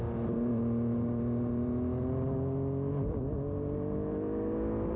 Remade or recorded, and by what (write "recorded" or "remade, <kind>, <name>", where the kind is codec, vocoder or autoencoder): recorded